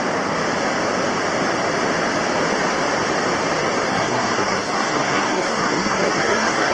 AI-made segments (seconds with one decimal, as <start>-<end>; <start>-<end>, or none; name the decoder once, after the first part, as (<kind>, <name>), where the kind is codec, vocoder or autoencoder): 3.9-6.7 (codec, SNAC)